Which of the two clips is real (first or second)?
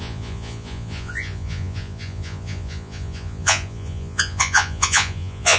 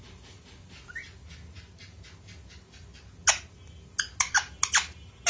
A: second